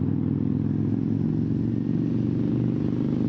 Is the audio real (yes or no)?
yes